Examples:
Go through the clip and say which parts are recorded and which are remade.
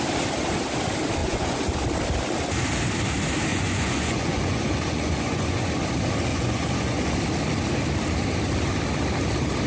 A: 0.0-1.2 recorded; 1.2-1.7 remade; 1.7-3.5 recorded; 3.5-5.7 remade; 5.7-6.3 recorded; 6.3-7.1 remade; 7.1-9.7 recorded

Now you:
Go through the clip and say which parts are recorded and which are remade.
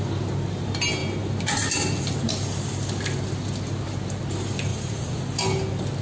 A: 0.0-4.7 recorded; 4.7-5.2 remade; 5.2-6.0 recorded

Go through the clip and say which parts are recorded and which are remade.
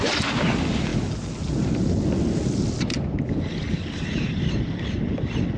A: 0.0-5.6 recorded